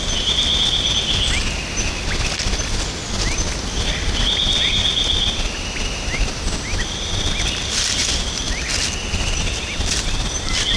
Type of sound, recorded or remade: recorded